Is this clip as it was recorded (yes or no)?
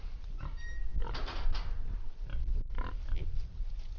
yes